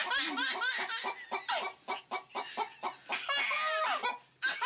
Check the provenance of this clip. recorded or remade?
recorded